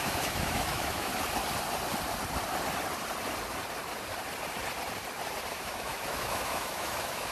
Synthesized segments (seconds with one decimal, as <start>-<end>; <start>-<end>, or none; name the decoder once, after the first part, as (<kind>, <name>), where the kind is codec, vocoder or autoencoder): 0.0-1.1 (autoencoder, DAC-VAE); 5.5-7.3